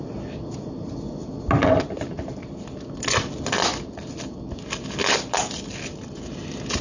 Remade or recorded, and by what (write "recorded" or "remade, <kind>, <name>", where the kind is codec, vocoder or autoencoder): recorded